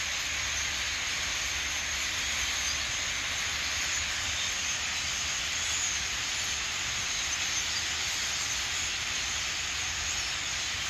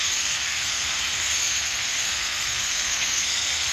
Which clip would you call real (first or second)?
first